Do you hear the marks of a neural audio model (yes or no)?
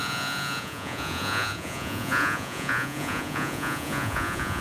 yes